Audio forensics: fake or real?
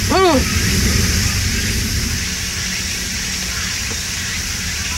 real